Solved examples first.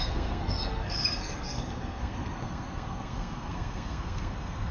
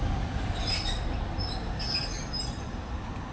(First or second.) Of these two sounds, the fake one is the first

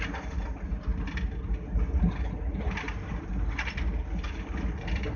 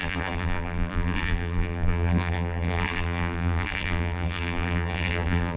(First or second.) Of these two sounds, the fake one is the second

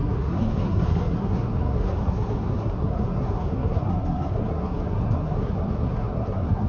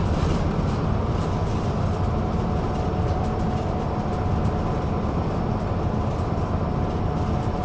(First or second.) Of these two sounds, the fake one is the first